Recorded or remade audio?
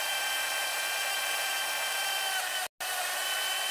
recorded